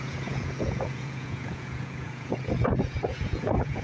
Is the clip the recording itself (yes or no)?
no